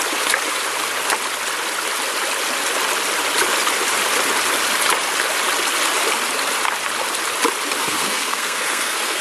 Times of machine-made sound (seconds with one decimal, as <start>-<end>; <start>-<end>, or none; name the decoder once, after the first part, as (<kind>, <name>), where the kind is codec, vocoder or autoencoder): 7.8-9.2 (codec, SNAC)